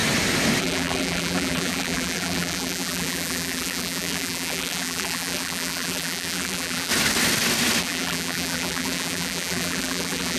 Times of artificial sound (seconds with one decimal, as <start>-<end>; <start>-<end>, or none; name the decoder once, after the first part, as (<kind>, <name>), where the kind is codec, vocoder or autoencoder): 0.6-6.9 (vocoder, BigVGAN v2); 7.8-10.4